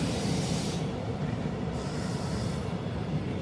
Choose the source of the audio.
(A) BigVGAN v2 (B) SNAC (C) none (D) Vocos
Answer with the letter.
A